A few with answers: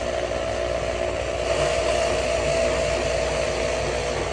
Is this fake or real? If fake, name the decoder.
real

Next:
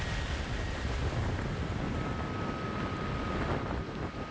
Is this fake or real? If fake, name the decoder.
real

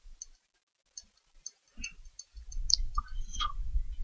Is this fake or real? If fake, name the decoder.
real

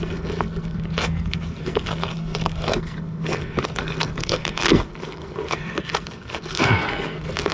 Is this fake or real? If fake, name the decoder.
fake, codec, SNAC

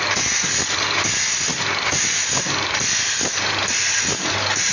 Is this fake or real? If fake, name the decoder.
real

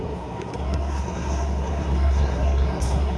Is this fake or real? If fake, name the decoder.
fake, codec, SNAC